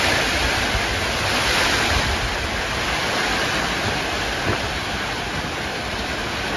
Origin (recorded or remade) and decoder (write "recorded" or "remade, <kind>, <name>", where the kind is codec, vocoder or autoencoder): recorded